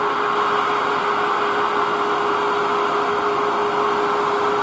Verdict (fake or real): real